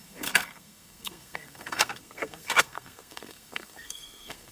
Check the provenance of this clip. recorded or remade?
remade